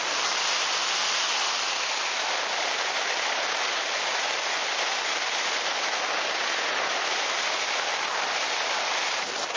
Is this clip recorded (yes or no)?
yes